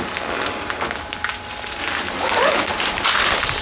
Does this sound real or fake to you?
real